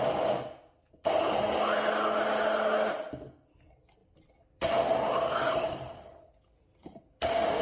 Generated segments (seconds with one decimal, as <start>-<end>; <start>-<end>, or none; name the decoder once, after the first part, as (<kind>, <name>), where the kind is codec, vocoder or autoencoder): none